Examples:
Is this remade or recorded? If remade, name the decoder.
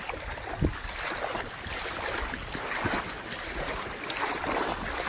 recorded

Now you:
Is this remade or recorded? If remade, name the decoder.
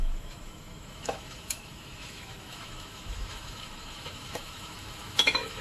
remade, autoencoder, DAC-VAE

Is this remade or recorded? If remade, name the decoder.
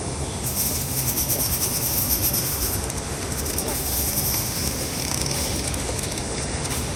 remade, autoencoder, DAC-VAE